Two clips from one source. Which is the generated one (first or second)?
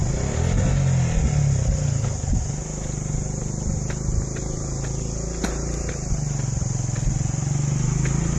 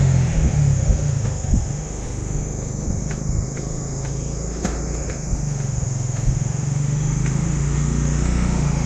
second